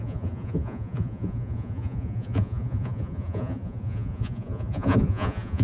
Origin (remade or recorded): remade